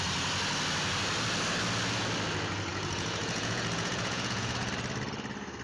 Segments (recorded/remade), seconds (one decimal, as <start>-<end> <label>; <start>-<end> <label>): 0.0-2.7 recorded; 2.7-4.7 remade; 4.7-5.6 recorded